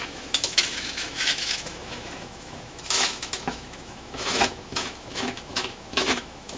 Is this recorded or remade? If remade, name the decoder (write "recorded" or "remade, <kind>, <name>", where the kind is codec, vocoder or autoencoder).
remade, autoencoder, DAC-VAE